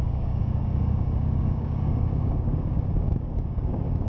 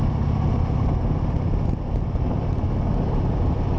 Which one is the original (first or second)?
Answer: second